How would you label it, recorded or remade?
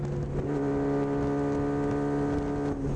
recorded